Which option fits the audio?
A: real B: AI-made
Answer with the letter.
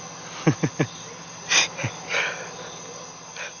A